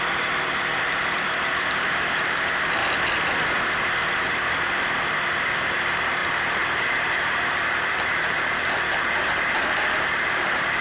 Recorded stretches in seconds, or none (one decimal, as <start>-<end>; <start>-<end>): 2.8-5.3